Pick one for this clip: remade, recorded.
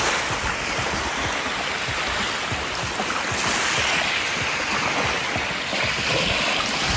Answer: recorded